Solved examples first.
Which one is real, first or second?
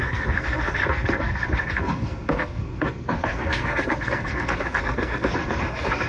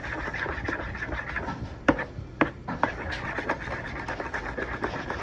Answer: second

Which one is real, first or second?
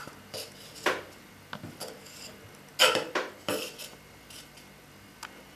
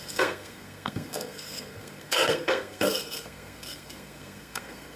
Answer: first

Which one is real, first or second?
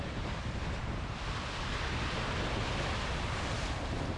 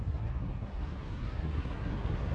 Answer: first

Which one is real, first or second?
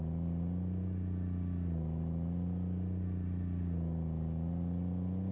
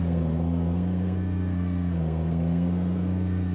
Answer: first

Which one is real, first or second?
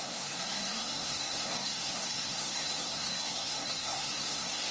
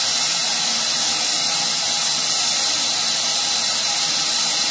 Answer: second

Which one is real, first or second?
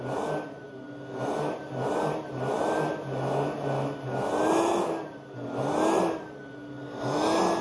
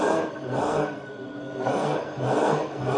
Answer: first